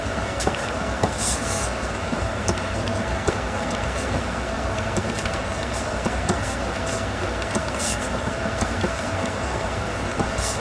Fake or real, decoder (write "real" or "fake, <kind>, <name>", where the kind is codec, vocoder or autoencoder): fake, codec, SNAC